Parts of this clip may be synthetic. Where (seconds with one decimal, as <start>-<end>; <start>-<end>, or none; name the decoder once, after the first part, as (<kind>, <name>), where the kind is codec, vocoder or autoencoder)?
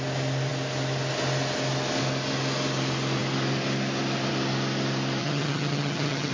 5.2-6.3 (vocoder, HiFi-GAN)